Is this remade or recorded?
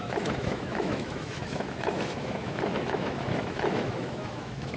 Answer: remade